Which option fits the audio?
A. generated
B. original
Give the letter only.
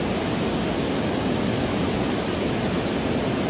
B